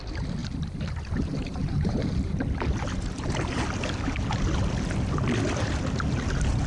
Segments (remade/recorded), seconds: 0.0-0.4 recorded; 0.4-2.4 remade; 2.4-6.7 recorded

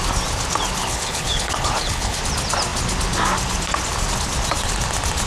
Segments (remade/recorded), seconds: 0.0-0.8 recorded; 0.8-2.2 remade; 2.2-5.3 recorded

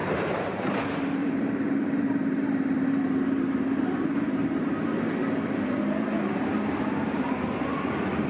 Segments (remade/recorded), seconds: 0.0-0.7 remade; 0.7-1.2 recorded; 1.2-4.8 remade; 4.8-5.2 recorded; 5.2-7.6 remade; 7.6-8.3 recorded

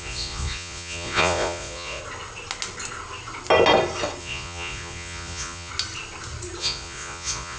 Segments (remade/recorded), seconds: 0.0-2.0 remade; 2.0-4.2 recorded; 4.2-5.7 remade; 5.7-6.6 recorded; 6.6-7.6 remade

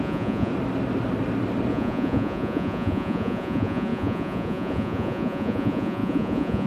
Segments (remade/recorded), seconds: 0.0-0.5 remade; 0.5-1.7 recorded; 1.7-6.7 remade

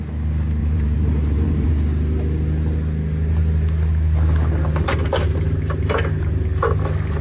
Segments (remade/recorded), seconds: 0.0-0.6 recorded; 0.6-1.7 remade; 1.7-7.2 recorded

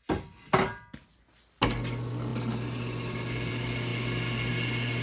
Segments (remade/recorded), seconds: 0.0-5.0 recorded